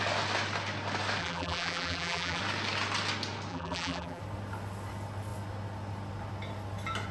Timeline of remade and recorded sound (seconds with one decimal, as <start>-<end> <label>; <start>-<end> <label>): 0.0-1.2 recorded; 1.2-2.4 remade; 2.4-3.5 recorded; 3.5-4.2 remade; 4.2-7.1 recorded